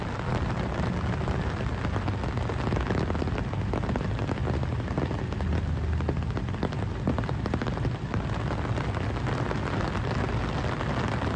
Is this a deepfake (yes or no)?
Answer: no